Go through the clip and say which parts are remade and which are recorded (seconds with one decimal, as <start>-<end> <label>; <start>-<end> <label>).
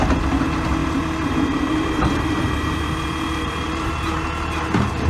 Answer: 0.0-0.8 recorded; 0.8-3.9 remade; 3.9-5.1 recorded